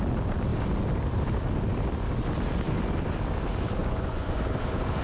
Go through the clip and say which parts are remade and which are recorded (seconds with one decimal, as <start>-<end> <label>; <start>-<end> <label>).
0.0-3.8 recorded; 3.8-4.4 remade; 4.4-5.0 recorded